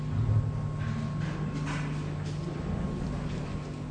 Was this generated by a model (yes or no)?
no